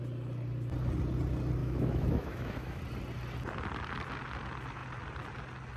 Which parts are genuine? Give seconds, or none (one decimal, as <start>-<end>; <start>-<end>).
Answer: 0.0-1.6; 2.8-5.8